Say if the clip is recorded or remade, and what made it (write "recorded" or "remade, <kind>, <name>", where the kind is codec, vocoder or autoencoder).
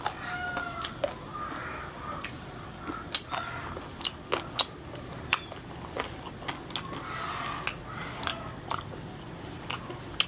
recorded